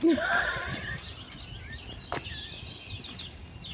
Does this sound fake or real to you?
real